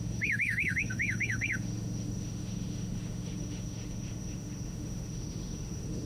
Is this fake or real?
fake